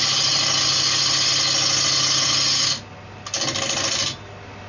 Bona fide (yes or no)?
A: yes